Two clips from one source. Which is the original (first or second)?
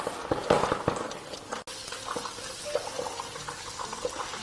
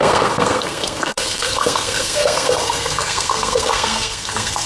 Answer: first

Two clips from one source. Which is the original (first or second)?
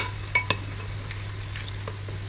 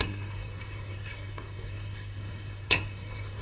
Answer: first